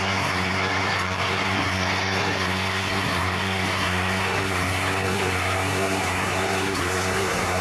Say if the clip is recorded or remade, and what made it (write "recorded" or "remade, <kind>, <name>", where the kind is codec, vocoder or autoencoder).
remade, codec, SNAC